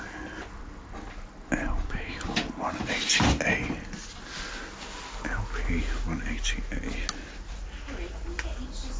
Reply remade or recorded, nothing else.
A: recorded